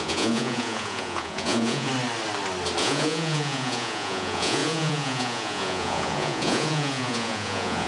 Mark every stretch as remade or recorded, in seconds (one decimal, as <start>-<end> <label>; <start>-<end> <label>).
0.0-1.9 remade; 1.9-2.8 recorded; 2.8-7.9 remade